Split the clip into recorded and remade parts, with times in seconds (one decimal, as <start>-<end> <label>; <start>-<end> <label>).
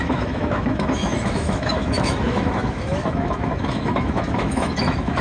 0.0-5.2 remade